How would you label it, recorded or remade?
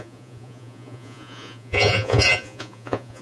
remade